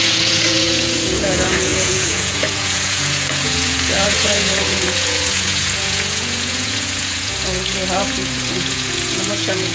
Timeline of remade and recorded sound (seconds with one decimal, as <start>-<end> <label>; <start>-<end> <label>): 0.0-9.7 remade